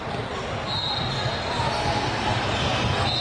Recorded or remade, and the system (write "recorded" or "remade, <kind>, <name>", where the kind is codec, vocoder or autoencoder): recorded